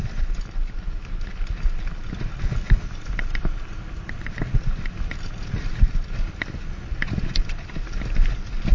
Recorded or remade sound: recorded